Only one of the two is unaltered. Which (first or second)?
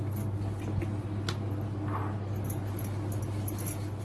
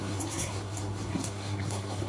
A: first